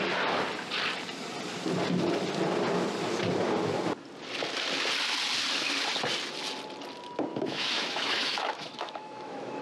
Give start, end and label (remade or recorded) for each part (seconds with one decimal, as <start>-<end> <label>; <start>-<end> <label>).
0.0-7.3 recorded; 7.3-9.6 remade